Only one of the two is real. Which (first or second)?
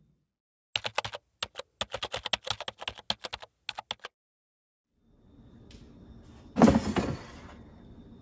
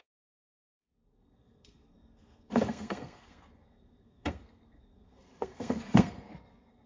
first